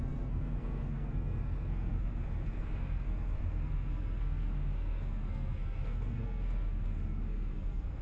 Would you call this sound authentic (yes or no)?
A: no